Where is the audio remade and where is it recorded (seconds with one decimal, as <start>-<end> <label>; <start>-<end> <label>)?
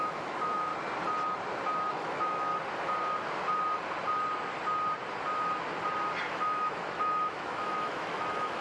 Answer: 0.0-0.7 remade; 0.7-1.9 recorded; 1.9-2.5 remade; 2.5-6.3 recorded; 6.3-8.6 remade